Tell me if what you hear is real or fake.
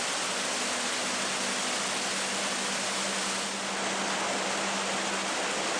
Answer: real